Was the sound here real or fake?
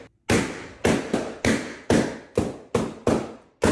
real